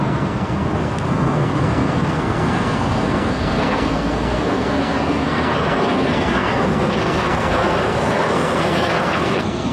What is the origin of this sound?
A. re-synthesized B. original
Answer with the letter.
A